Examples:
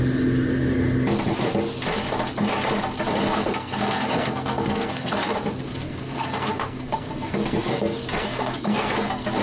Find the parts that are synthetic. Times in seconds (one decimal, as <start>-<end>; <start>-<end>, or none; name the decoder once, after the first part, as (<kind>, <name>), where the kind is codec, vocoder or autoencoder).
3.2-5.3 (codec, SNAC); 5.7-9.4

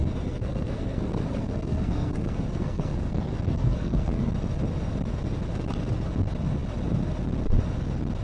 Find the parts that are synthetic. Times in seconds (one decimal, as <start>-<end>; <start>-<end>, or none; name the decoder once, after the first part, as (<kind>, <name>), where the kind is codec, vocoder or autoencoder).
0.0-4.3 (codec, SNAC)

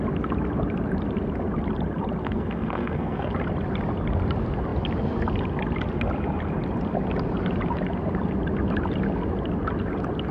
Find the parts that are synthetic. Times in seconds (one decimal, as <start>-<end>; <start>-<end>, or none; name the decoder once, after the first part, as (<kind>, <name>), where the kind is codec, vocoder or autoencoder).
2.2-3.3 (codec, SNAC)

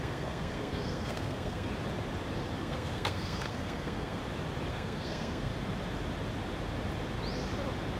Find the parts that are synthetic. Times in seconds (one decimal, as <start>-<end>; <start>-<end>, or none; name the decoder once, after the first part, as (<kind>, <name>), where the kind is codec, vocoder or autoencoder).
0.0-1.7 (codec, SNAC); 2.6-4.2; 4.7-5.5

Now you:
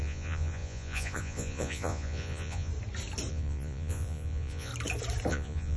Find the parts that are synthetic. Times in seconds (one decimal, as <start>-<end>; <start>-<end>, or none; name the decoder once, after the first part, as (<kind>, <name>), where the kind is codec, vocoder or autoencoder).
0.0-2.7 (vocoder, Vocos); 3.3-4.7; 5.3-5.8